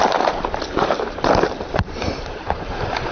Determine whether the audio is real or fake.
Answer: fake